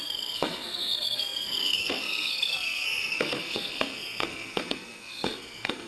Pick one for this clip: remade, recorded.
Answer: remade